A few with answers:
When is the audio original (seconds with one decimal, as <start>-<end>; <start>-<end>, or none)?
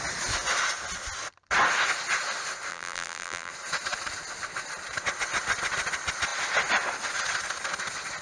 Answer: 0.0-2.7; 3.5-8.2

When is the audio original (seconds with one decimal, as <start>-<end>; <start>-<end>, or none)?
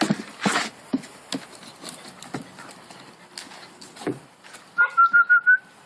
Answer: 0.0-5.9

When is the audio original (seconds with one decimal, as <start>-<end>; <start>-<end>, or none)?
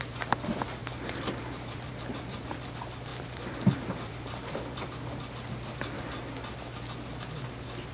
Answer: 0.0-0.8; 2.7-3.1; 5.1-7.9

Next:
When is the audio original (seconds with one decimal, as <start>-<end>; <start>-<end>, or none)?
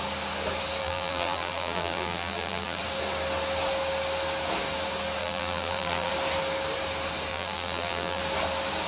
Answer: 0.0-0.8; 2.8-5.2; 6.1-7.3; 8.2-8.9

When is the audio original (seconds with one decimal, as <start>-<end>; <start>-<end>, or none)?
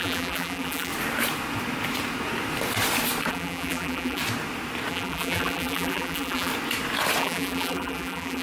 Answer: 0.9-3.3; 4.2-4.9; 6.5-7.2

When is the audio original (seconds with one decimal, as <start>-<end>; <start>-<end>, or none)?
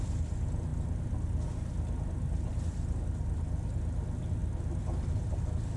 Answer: 0.0-5.8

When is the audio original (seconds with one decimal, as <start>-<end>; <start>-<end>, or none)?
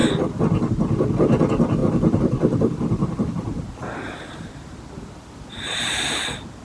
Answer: 0.7-1.8; 5.8-6.6